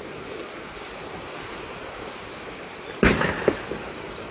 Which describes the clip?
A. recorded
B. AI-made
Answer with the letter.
A